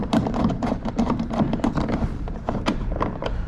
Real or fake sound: fake